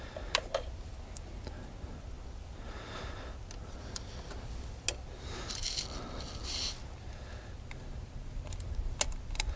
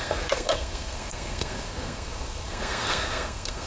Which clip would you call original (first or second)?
first